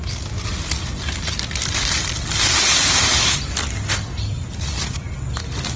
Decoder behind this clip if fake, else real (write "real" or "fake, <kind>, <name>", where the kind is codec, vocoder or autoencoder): real